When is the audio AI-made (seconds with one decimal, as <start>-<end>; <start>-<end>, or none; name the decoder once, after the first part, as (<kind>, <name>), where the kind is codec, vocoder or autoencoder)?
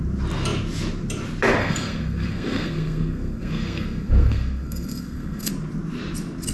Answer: 1.6-5.5 (codec, SNAC)